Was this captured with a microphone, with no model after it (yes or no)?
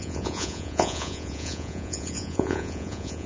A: no